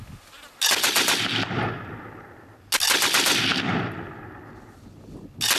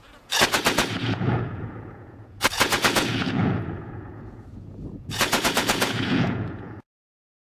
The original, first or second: first